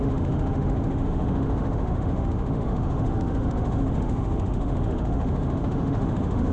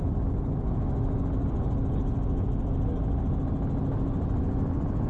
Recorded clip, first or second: second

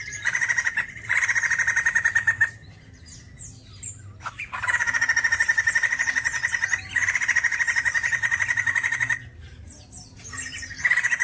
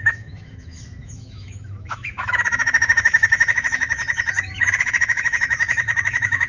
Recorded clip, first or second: first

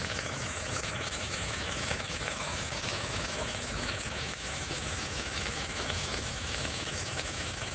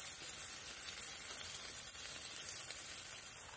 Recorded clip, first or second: second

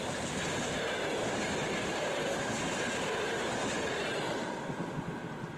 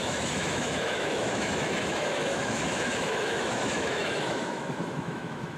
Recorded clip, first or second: first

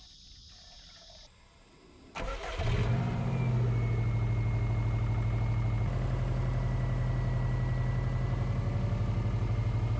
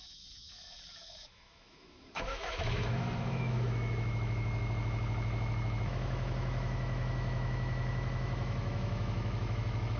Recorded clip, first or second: first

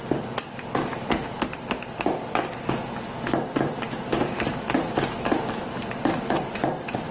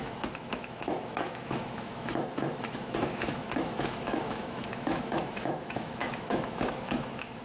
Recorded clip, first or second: first